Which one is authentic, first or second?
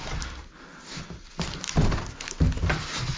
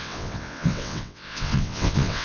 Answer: first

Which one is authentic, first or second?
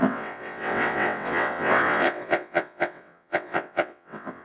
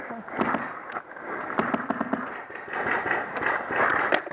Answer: second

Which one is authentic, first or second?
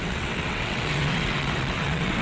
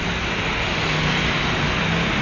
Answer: second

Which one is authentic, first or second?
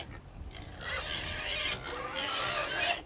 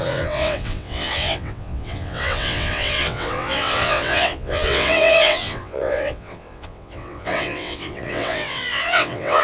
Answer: first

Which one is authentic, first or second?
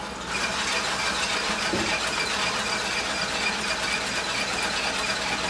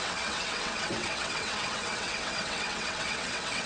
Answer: first